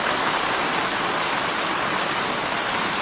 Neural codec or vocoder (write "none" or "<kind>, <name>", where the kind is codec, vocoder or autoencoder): none